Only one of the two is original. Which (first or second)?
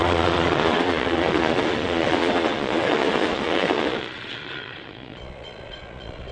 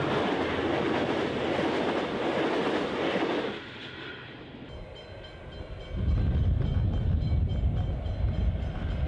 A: second